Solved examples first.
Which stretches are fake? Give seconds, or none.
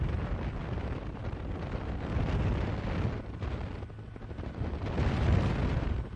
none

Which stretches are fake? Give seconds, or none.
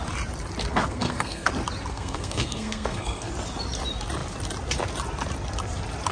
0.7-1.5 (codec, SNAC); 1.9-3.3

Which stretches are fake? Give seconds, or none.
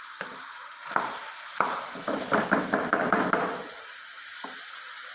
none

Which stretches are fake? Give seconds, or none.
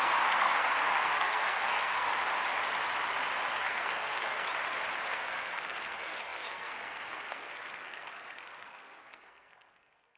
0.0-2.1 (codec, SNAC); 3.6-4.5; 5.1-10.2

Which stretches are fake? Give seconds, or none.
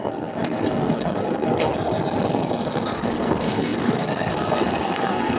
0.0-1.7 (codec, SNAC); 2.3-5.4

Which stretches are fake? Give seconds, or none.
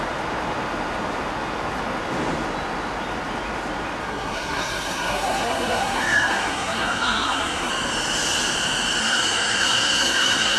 4.0-7.7 (codec, SNAC); 9.0-10.6